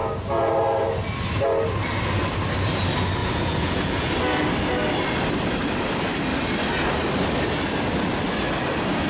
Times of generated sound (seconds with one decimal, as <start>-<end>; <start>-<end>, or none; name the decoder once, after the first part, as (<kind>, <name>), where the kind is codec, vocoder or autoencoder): 0.0-0.5 (vocoder, Vocos); 3.2-4.1

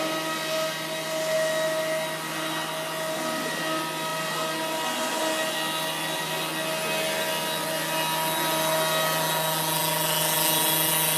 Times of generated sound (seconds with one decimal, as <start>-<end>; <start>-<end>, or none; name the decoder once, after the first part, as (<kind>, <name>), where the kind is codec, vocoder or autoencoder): none